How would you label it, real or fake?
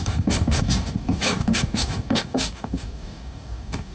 fake